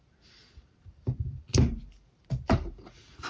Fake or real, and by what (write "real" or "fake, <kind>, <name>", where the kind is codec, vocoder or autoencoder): fake, vocoder, BigVGAN v2